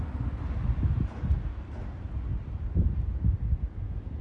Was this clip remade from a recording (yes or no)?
no